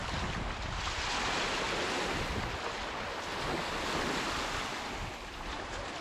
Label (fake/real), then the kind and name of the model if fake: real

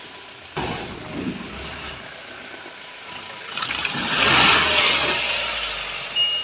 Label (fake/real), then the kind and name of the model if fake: real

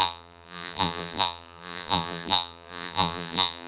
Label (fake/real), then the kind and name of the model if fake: fake, vocoder, BigVGAN v2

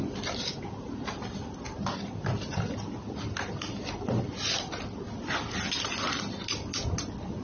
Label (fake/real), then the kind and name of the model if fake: real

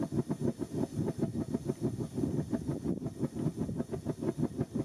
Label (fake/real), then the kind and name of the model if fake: real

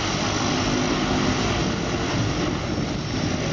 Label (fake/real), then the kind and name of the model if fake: real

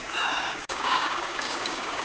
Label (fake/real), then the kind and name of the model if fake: fake, codec, DAC